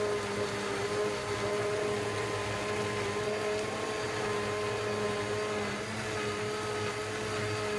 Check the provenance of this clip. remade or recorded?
recorded